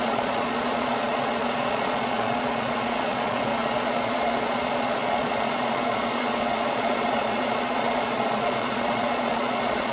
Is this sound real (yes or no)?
no